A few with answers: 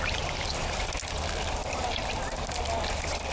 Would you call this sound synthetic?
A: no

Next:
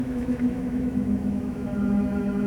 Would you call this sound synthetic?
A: yes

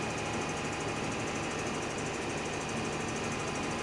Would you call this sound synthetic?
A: no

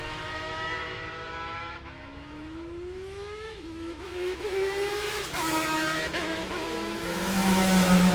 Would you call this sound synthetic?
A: yes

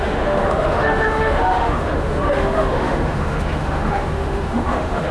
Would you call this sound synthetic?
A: yes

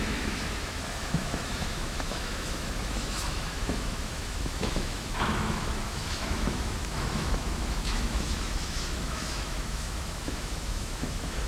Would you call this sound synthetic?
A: yes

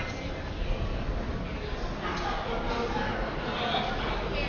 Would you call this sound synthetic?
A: no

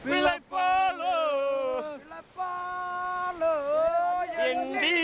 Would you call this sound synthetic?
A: no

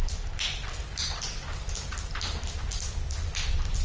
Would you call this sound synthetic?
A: no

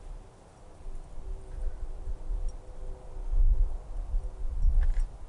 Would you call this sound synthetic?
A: no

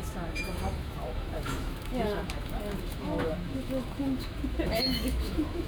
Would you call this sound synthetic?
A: yes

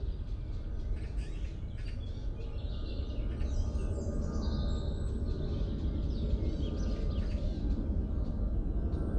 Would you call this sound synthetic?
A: no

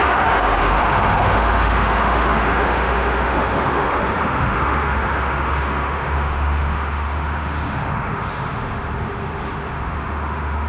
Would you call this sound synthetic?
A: yes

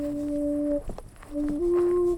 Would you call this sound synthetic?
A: no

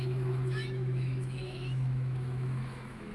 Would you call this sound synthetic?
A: yes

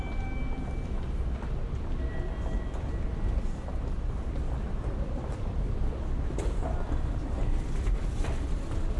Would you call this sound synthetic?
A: no